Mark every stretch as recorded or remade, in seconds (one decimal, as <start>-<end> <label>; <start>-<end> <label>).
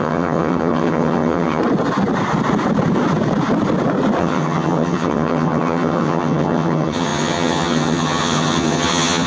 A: 0.0-1.6 remade; 1.6-4.2 recorded; 4.2-9.3 remade